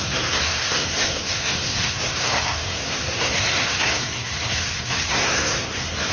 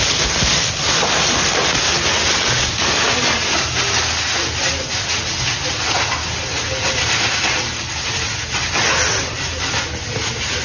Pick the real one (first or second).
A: second